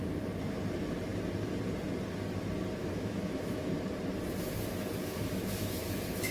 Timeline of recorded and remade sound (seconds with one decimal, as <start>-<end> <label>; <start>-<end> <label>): 0.0-2.8 recorded; 2.8-3.7 remade; 3.7-5.0 recorded; 5.0-5.8 remade; 5.8-6.3 recorded